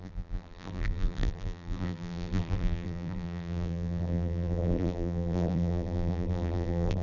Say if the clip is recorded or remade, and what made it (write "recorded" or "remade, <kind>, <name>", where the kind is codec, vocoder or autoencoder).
remade, vocoder, BigVGAN v2